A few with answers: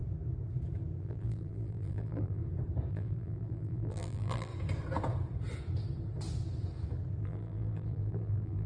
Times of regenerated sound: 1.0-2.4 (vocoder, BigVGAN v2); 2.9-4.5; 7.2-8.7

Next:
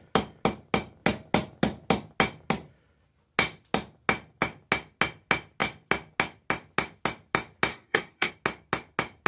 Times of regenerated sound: 7.7-8.3 (codec, SNAC)

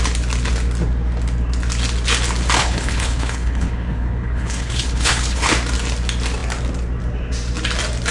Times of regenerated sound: 2.6-5.5 (codec, HILCodec)